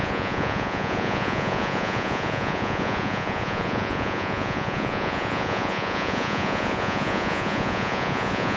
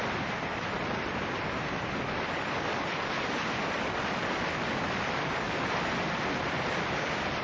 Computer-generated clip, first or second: first